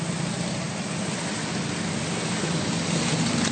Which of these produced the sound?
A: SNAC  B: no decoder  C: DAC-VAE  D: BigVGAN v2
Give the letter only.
B